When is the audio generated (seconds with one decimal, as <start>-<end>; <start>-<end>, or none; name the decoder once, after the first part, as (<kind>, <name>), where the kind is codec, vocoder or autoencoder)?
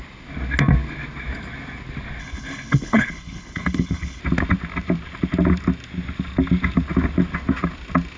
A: 2.2-4.2 (codec, HILCodec)